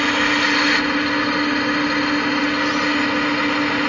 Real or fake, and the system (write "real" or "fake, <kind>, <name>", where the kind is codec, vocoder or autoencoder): real